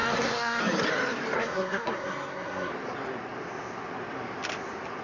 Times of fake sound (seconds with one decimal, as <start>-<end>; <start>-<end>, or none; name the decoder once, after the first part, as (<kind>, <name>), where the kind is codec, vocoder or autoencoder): 0.0-0.6 (codec, SNAC); 1.4-2.7